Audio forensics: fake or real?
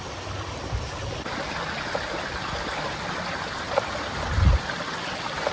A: real